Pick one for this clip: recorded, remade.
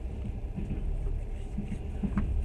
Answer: recorded